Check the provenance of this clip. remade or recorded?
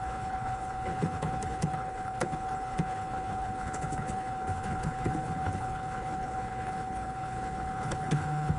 remade